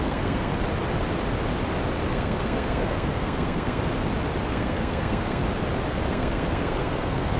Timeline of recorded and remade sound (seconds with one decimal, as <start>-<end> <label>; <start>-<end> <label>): 0.0-0.5 remade; 0.5-2.1 recorded; 2.1-4.0 remade; 4.0-4.5 recorded; 4.5-5.4 remade; 5.4-6.1 recorded; 6.1-7.4 remade